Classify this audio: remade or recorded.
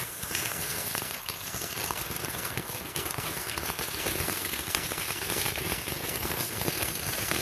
remade